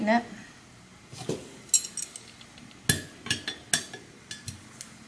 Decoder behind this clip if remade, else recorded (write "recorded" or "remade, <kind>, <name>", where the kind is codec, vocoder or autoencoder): recorded